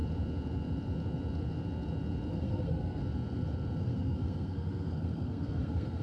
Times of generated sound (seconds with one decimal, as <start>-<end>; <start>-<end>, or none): 2.3-3.0; 3.8-6.0